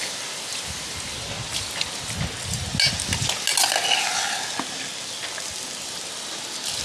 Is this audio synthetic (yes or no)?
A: no